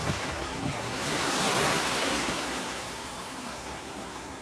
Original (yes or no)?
no